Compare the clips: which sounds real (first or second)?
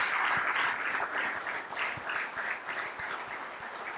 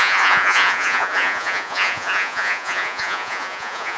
first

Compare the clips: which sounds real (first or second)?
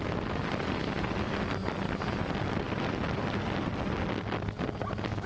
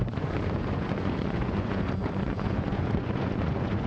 first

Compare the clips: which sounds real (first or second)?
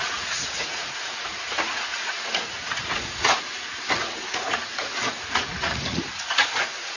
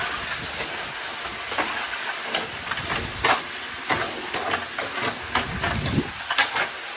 second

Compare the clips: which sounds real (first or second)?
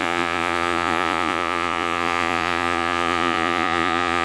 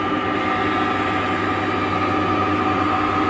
second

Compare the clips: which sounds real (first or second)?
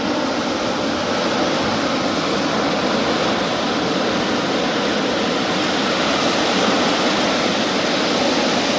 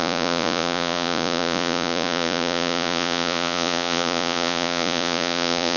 first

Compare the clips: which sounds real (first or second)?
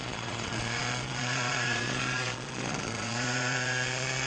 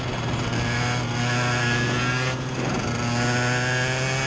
second